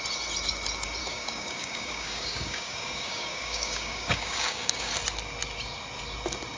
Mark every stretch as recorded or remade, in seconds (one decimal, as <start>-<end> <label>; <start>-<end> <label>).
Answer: 0.0-1.0 recorded; 1.0-4.9 remade; 4.9-6.6 recorded

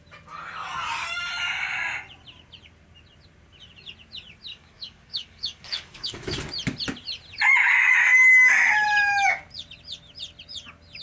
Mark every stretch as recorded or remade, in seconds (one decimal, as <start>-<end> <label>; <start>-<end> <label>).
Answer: 0.0-4.5 recorded; 4.5-6.4 remade; 6.4-11.0 recorded

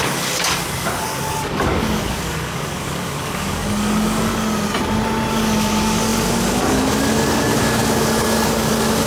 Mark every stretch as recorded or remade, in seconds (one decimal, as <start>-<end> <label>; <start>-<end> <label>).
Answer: 0.0-4.3 remade; 4.3-5.3 recorded; 5.3-9.1 remade